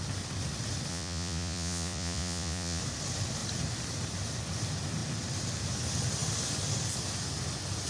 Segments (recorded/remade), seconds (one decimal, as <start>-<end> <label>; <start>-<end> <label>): 0.0-0.9 recorded; 0.9-2.8 remade; 2.8-7.9 recorded